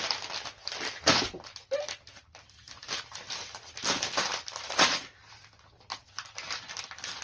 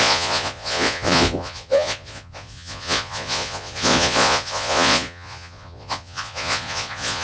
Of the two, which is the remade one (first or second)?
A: second